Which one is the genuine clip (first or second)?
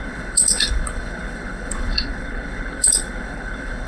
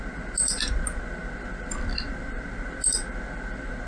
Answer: second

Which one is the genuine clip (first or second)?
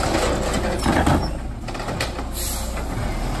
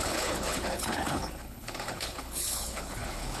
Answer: first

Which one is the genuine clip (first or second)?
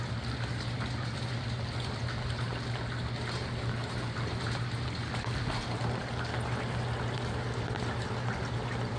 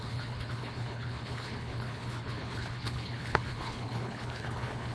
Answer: first